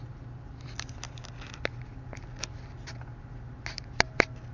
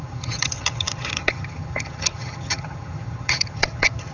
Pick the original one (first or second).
first